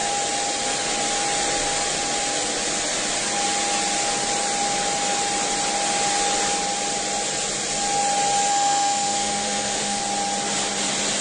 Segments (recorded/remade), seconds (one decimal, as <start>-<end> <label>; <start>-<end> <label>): 0.0-8.5 recorded; 8.5-10.0 remade; 10.0-11.2 recorded